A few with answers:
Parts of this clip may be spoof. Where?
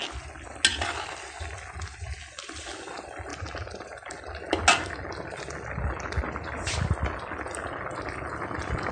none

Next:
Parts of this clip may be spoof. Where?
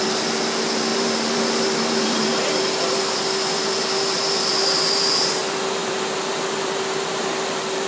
0.0-7.9 (vocoder, BigVGAN v2)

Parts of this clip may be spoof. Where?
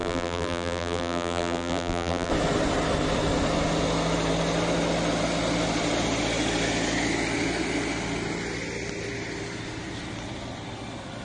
0.0-2.3 (vocoder, BigVGAN v2)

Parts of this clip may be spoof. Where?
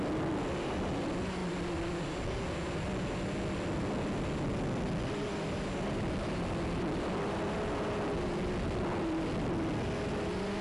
none